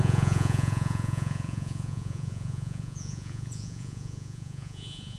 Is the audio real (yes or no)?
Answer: no